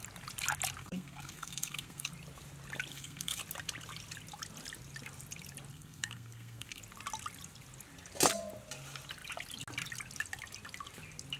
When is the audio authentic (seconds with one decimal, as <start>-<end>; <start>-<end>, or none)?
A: 0.0-0.8; 2.1-2.9; 3.4-5.7; 6.8-11.4

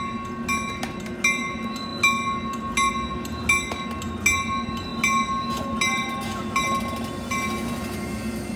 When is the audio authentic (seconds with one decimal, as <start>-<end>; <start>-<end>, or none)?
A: 0.0-8.6

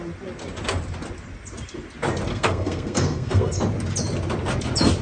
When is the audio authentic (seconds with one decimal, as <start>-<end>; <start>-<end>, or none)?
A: 0.0-2.3; 3.6-5.0

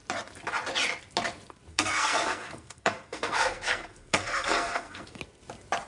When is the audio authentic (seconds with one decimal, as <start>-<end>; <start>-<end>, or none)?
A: 0.0-1.7; 5.2-5.9

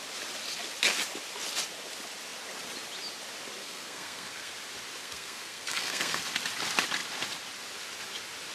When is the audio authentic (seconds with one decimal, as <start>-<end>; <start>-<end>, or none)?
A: 0.0-3.6; 4.5-5.0; 6.2-8.5

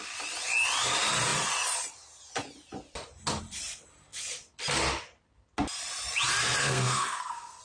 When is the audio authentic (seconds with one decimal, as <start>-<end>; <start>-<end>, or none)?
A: 0.0-6.6